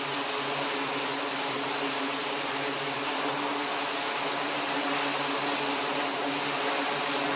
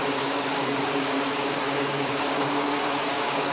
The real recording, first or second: first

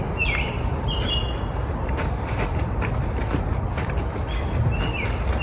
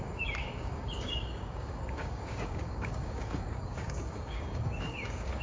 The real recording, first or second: first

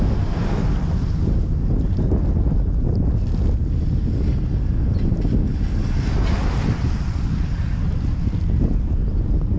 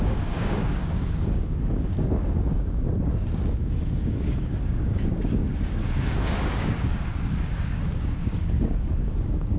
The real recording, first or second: first